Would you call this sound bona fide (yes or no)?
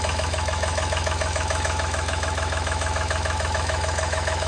no